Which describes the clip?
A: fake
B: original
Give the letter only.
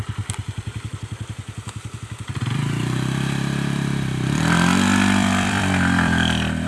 A